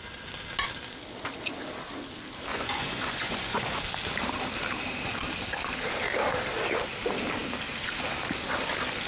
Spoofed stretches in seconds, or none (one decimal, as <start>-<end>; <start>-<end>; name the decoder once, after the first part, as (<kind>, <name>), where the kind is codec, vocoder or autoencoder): 2.5-3.8 (vocoder, Vocos)